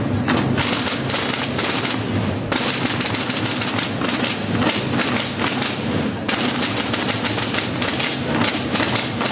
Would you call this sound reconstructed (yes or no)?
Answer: no